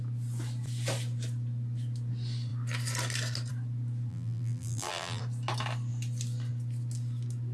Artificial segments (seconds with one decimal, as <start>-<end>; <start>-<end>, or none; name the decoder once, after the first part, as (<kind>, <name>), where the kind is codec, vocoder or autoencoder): 4.1-5.2 (vocoder, BigVGAN v2)